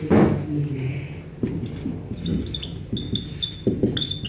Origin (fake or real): real